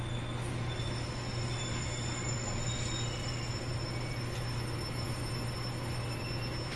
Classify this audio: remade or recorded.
recorded